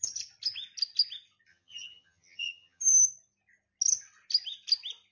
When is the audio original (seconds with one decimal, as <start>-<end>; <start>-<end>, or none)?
0.0-1.5; 2.8-5.1